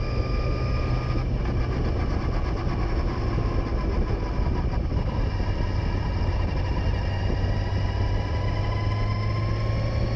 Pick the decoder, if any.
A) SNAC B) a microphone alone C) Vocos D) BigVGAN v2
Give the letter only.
B